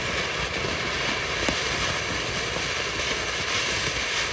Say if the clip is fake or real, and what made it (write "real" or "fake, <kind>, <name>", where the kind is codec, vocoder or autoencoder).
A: real